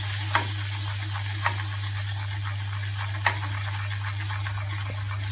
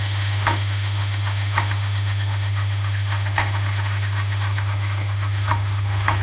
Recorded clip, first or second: first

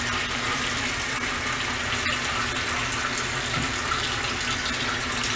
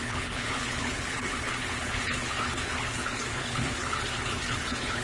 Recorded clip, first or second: first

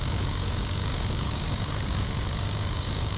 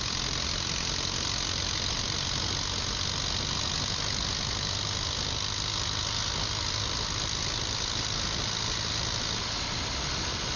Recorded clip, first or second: second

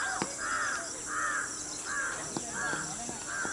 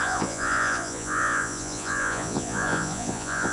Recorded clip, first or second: first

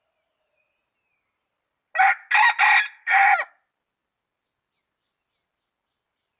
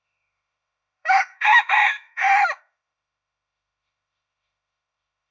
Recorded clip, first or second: first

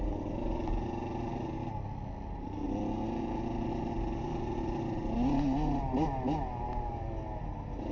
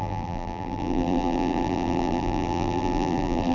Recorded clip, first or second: first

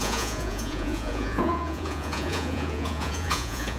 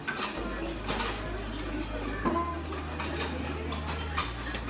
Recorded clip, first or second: second